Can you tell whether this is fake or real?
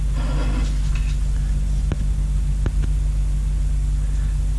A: real